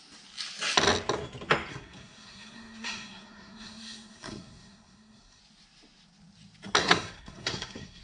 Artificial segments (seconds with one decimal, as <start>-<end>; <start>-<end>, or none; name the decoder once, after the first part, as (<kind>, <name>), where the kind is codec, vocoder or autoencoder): 1.7-5.4 (codec, SNAC); 6.8-8.0